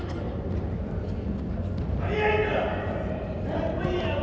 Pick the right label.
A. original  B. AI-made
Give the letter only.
A